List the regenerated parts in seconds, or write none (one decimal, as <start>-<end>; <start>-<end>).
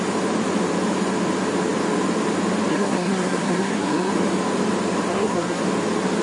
2.7-4.1; 5.1-5.6